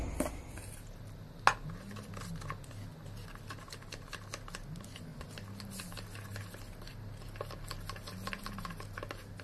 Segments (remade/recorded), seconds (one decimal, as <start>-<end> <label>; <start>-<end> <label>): 0.0-9.4 recorded